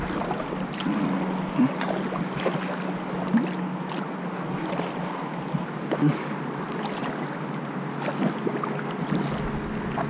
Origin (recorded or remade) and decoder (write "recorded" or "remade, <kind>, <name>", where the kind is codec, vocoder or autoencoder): recorded